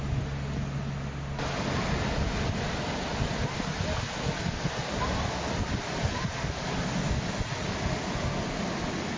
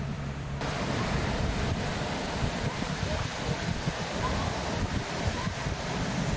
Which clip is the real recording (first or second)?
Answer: first